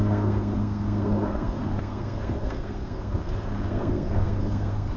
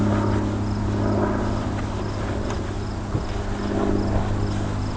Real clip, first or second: second